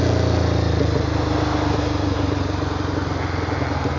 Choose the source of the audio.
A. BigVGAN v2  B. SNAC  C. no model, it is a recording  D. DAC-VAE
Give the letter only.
C